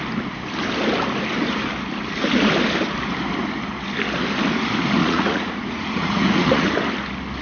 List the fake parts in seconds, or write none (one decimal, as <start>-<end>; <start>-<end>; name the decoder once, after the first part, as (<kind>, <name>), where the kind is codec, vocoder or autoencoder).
5.0-6.7 (vocoder, Vocos)